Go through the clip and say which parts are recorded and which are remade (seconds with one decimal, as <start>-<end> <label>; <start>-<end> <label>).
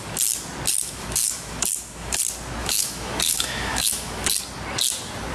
0.0-0.7 recorded; 0.7-2.2 remade; 2.2-2.6 recorded; 2.6-4.4 remade; 4.4-5.3 recorded